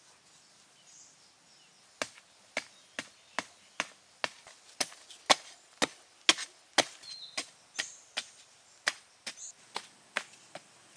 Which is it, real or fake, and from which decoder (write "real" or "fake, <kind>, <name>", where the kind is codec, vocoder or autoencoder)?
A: real